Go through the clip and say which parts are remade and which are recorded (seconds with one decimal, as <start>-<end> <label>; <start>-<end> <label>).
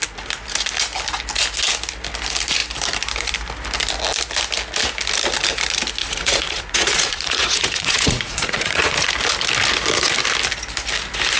0.0-6.0 recorded; 6.0-9.1 remade; 9.1-11.4 recorded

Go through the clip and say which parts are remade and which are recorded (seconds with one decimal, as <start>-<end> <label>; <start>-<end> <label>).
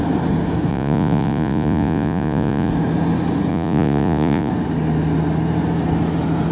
0.0-0.7 recorded; 0.7-2.7 remade; 2.7-3.5 recorded; 3.5-4.5 remade; 4.5-6.5 recorded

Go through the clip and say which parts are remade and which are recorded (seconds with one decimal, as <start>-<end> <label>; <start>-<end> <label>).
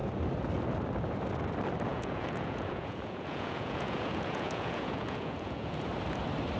0.0-1.9 recorded; 1.9-5.9 remade; 5.9-6.6 recorded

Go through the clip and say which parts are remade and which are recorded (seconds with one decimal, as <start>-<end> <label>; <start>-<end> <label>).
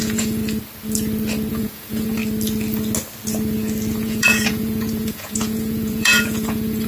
0.0-0.4 remade; 0.4-1.5 recorded; 1.5-2.2 remade; 2.2-3.9 recorded; 3.9-6.9 remade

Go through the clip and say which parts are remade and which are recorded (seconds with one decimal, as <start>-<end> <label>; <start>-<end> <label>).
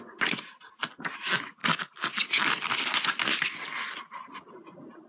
0.0-5.1 recorded